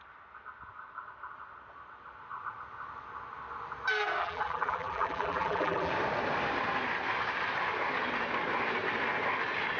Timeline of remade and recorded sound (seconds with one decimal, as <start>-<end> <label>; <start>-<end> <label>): 0.0-4.2 recorded; 4.2-5.9 remade; 5.9-9.8 recorded